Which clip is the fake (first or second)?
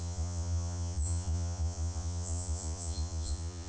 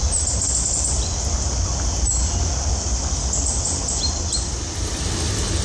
first